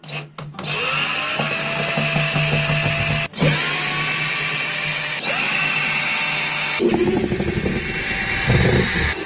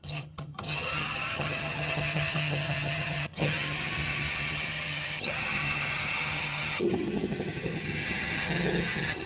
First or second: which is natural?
first